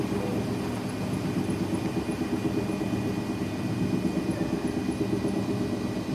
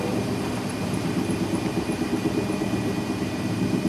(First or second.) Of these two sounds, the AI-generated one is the second